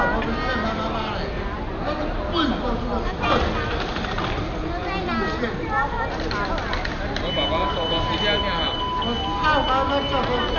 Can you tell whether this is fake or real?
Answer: real